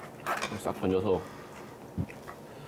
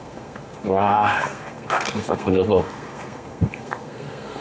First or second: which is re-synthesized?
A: second